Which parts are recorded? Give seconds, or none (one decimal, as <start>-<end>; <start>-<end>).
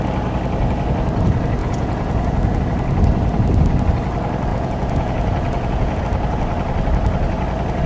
0.0-1.6; 2.6-4.5; 6.0-7.9